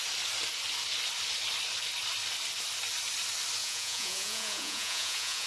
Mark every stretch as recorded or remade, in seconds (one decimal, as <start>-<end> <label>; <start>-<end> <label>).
0.0-3.6 recorded; 3.6-5.5 remade